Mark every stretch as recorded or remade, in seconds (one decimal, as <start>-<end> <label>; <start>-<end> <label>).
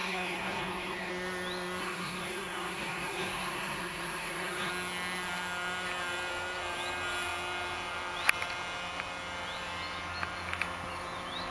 0.0-1.1 remade; 1.1-1.8 recorded; 1.8-4.7 remade; 4.7-11.5 recorded